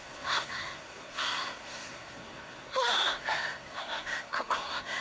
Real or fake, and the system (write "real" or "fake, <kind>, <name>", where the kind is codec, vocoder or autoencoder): fake, codec, SNAC